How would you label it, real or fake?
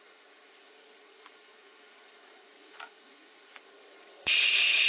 fake